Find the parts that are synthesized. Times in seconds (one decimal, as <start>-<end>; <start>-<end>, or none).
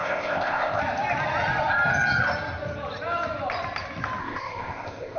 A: 0.0-0.8; 4.2-5.2